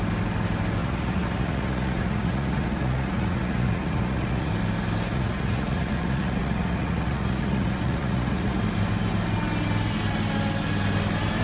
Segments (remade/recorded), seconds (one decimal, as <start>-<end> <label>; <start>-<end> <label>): 0.0-0.8 recorded; 0.8-4.5 remade; 4.5-5.1 recorded; 5.1-8.6 remade; 8.6-11.4 recorded